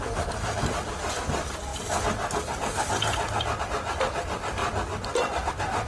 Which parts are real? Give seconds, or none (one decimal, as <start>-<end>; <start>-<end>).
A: 0.0-5.9